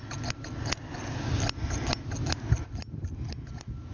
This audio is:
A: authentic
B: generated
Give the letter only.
A